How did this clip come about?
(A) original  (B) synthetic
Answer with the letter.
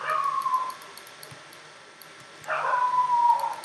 A